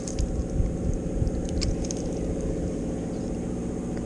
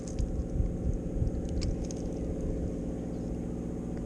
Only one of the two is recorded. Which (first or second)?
second